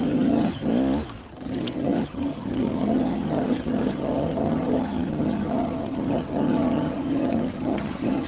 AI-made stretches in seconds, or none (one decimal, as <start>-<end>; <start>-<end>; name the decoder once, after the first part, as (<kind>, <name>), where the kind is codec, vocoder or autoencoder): 0.0-0.7 (vocoder, HiFi-GAN); 1.3-8.3